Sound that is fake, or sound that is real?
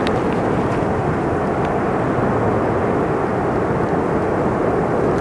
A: real